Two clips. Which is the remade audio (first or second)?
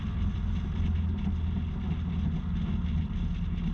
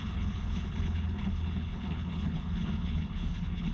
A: second